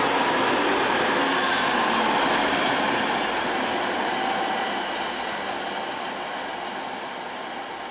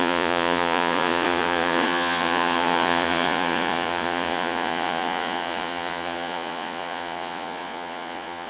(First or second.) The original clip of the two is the first